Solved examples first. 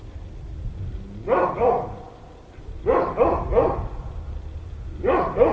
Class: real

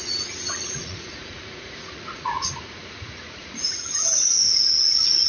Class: fake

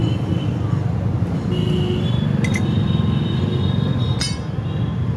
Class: real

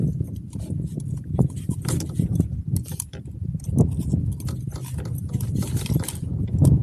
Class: real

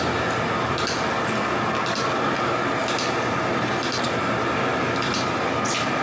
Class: real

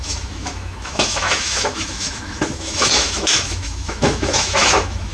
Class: fake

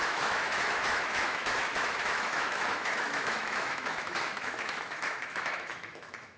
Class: fake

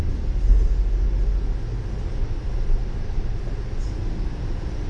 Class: real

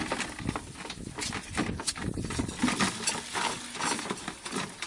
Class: real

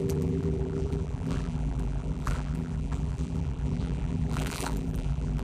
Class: fake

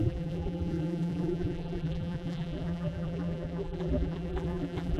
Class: fake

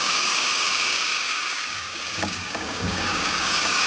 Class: fake